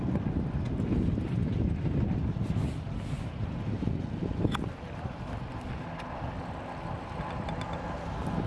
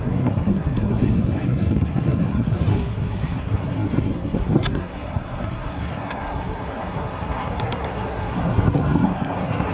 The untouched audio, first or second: first